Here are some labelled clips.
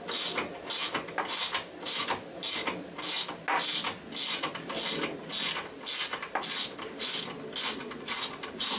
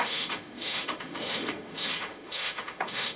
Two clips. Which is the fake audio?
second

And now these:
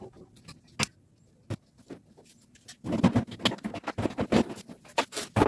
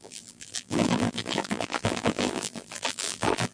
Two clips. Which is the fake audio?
second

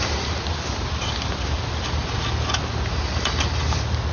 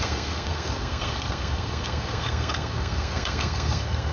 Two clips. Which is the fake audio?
second